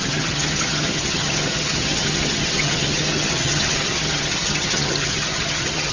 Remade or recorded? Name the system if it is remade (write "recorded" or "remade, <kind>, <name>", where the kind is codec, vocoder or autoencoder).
remade, vocoder, HiFi-GAN